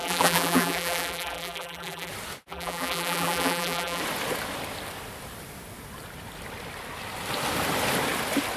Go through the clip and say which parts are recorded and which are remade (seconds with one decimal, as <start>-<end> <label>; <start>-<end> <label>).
0.0-2.1 remade; 2.1-2.5 recorded; 2.5-4.0 remade; 4.0-8.6 recorded